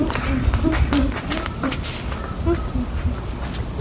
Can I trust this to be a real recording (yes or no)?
yes